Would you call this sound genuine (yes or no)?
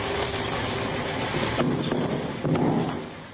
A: yes